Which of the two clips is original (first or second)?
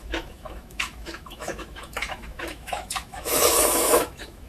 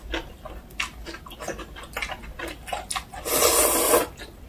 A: second